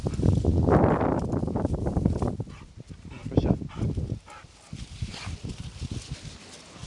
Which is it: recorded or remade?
recorded